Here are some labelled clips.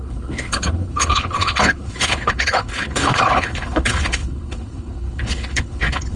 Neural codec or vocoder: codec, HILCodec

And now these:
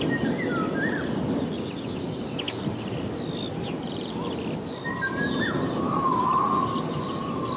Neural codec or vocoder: none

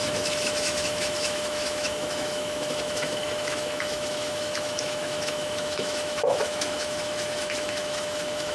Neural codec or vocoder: autoencoder, DAC-VAE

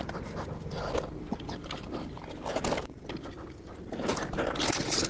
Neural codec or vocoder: none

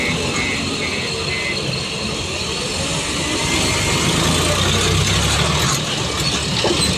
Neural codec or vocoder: none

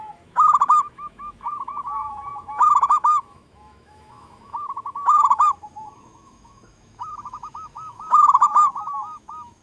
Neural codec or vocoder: autoencoder, DAC-VAE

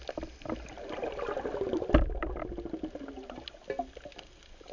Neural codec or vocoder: none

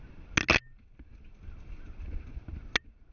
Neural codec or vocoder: none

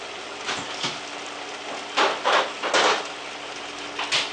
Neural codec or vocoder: none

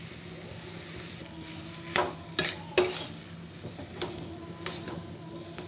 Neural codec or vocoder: none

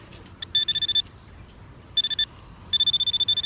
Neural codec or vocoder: none